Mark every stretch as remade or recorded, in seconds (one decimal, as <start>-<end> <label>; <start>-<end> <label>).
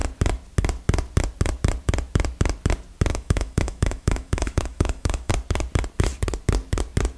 0.0-3.1 recorded; 3.1-5.3 remade; 5.3-7.2 recorded